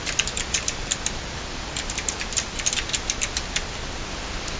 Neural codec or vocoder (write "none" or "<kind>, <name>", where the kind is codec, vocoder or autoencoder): none